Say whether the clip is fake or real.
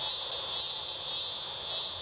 real